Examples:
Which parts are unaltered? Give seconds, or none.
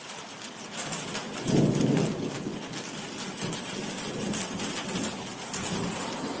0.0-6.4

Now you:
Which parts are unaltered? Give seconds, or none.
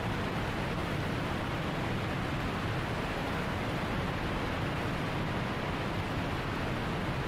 0.0-7.3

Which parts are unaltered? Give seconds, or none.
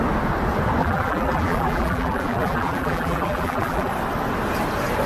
0.0-0.8; 3.9-5.1